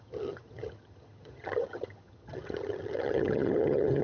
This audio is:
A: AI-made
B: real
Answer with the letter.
A